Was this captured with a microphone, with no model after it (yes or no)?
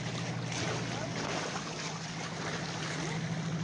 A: yes